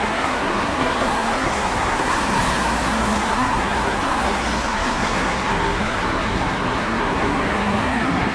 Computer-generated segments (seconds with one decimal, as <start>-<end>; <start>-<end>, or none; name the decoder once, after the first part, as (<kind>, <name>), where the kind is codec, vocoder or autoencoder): 0.0-8.3 (codec, SNAC)

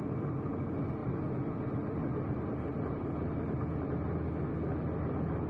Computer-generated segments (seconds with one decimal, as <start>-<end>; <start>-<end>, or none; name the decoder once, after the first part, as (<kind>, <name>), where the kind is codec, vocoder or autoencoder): none

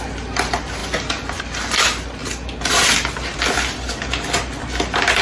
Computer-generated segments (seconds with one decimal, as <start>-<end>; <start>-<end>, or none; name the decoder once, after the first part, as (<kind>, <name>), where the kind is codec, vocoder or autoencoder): none

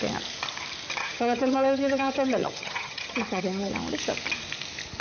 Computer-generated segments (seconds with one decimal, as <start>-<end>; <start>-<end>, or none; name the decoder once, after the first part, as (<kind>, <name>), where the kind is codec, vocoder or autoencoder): 1.0-3.7 (vocoder, HiFi-GAN)

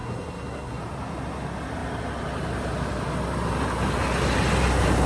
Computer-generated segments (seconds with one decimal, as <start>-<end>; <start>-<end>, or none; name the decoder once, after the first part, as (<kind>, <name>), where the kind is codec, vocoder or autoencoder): 0.0-0.8 (codec, SNAC)

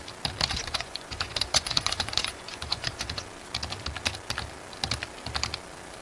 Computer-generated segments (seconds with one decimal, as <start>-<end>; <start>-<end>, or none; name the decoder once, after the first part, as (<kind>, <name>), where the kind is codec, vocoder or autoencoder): 0.5-3.2 (vocoder, Vocos)